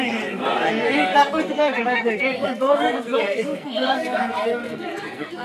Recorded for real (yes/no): no